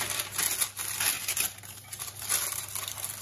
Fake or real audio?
real